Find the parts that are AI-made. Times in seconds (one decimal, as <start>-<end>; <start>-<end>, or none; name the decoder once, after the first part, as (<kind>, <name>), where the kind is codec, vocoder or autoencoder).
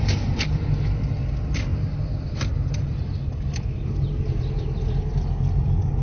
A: none